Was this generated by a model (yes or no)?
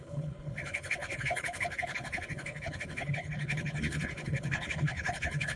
yes